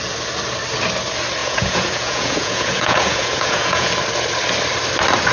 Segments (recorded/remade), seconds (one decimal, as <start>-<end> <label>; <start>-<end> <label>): 0.0-1.4 recorded; 1.4-3.9 remade; 3.9-5.3 recorded

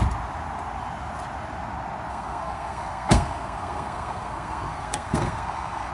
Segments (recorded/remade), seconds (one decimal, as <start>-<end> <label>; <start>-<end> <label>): 0.0-2.1 recorded; 2.1-5.9 remade

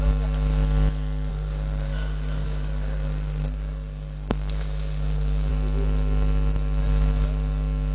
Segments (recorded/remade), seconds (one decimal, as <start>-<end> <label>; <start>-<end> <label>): 0.0-1.3 recorded; 1.3-5.5 remade; 5.5-7.9 recorded

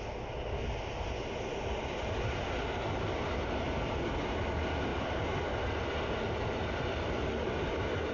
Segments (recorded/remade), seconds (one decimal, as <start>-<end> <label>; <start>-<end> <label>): 0.0-8.1 recorded

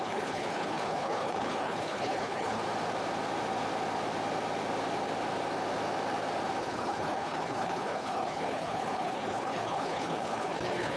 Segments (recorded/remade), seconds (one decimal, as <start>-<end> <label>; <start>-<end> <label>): 0.0-2.6 remade; 2.6-6.6 recorded; 6.6-11.0 remade

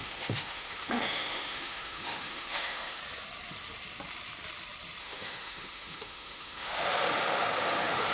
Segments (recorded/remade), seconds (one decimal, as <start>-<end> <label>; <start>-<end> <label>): 0.0-3.0 remade; 3.0-5.0 recorded; 5.0-8.1 remade

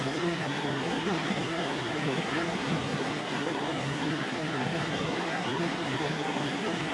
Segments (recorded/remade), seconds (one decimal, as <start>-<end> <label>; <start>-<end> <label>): 0.0-6.9 remade